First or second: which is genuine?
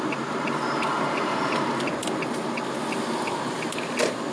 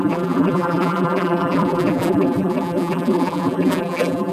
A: first